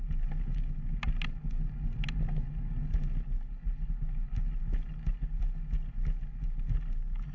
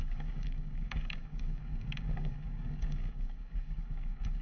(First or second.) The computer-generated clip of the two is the second